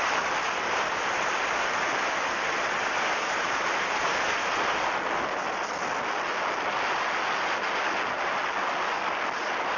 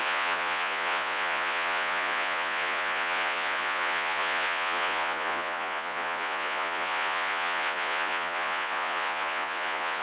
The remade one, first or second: second